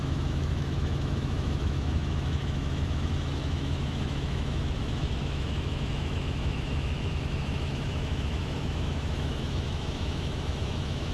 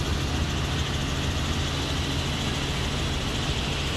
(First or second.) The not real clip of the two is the first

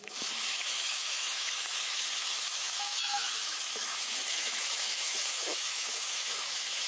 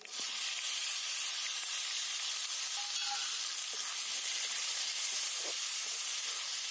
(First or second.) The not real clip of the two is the first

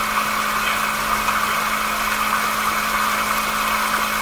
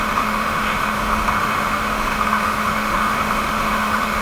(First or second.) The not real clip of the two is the second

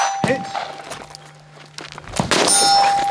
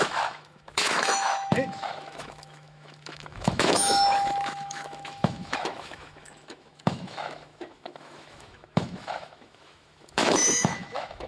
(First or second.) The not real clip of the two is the second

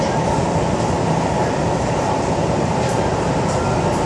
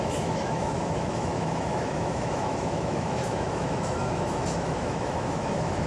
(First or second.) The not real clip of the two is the second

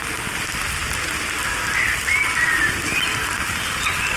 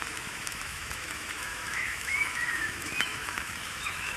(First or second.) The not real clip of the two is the second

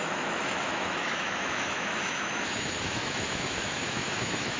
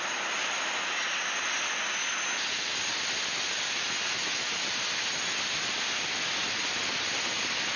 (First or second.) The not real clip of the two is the first